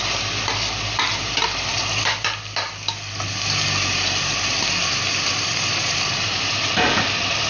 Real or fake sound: fake